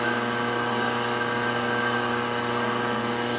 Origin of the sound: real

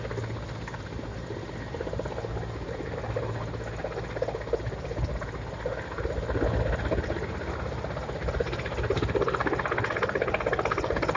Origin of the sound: real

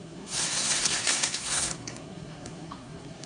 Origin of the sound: fake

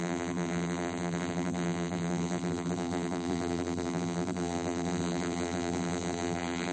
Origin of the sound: fake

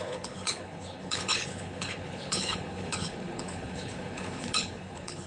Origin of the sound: fake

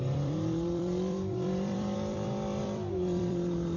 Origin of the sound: fake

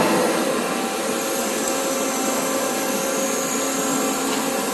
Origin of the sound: real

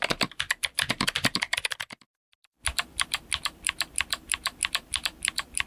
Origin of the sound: fake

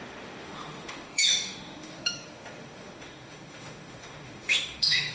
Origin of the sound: fake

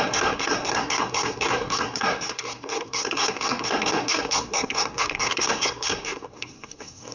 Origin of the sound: fake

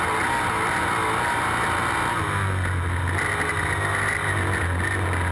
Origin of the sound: real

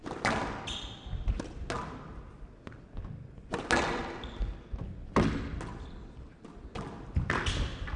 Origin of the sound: real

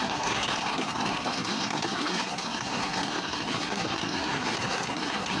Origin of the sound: fake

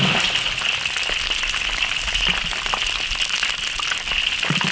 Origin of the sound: real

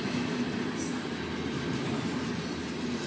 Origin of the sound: real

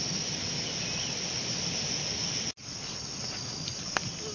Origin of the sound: real